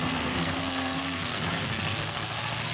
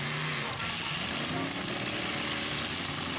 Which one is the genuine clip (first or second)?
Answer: second